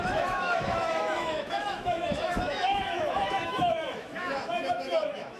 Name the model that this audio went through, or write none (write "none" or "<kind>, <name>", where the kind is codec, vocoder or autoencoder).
autoencoder, DAC-VAE